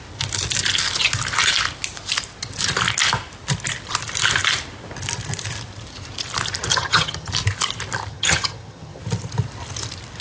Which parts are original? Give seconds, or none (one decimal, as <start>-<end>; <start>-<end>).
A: 0.0-6.7; 7.3-8.1; 9.0-10.2